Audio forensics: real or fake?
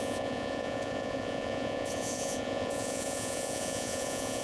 fake